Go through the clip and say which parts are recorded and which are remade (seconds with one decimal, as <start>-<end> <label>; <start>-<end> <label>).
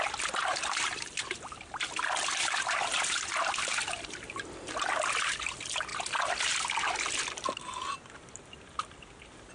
0.0-0.5 recorded; 0.5-2.0 remade; 2.0-9.5 recorded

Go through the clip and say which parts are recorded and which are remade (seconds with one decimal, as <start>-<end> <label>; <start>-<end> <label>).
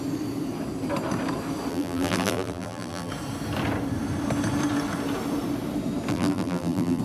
0.0-1.7 recorded; 1.7-3.1 remade; 3.1-6.1 recorded; 6.1-7.0 remade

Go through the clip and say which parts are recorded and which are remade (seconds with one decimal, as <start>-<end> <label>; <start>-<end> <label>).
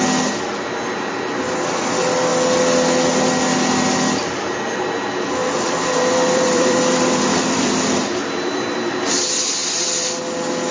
0.0-5.4 recorded; 5.4-9.0 remade; 9.0-9.6 recorded; 9.6-10.2 remade; 10.2-10.7 recorded